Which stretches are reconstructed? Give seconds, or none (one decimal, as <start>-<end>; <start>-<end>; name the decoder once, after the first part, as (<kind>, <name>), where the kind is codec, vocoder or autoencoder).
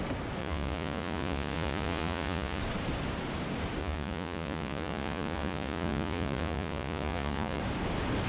0.4-2.6 (vocoder, Vocos); 3.8-7.6